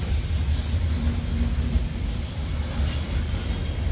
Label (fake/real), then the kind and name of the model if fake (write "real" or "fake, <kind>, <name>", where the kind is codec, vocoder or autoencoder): real